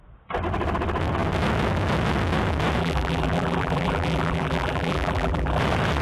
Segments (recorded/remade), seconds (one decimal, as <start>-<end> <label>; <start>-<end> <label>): 0.0-2.8 recorded; 2.8-5.6 remade; 5.6-6.0 recorded